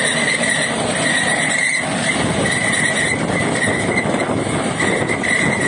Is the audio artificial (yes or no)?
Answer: no